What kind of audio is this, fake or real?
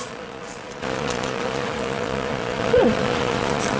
fake